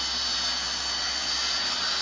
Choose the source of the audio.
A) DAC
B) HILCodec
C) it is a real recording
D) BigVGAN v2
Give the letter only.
C